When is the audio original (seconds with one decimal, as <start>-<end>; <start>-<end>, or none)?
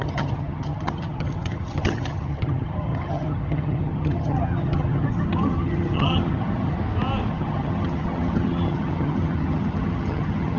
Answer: 6.8-7.3